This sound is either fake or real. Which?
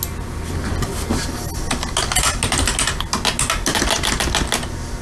real